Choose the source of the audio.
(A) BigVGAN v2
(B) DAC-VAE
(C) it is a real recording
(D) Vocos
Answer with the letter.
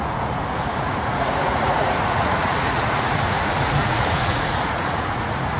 D